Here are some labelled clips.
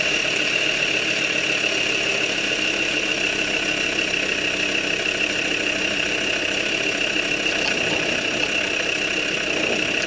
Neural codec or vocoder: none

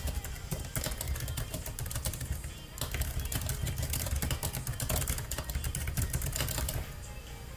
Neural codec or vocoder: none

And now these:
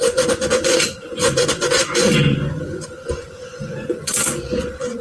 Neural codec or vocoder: vocoder, Vocos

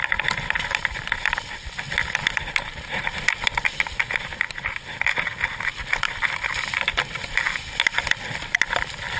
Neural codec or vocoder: none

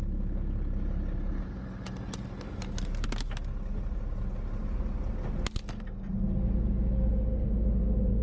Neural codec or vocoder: none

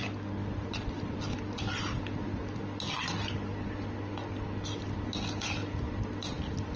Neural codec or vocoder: none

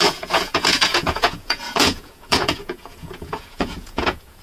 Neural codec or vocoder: vocoder, Vocos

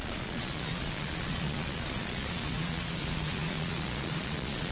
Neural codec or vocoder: vocoder, Vocos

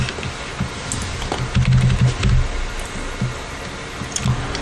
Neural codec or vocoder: none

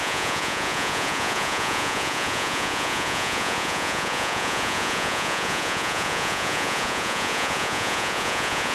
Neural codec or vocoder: vocoder, Vocos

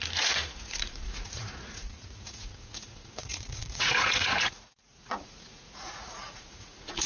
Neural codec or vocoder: vocoder, Vocos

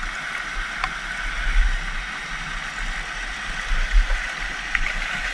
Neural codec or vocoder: none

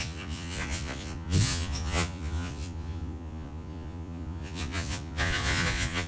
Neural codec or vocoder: vocoder, Vocos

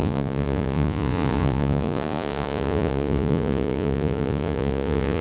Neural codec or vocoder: vocoder, Vocos